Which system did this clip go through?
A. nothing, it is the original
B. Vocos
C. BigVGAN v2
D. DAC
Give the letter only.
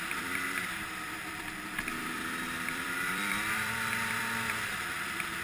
C